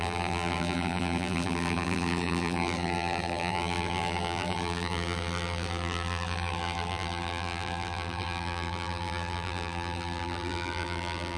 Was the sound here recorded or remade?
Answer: remade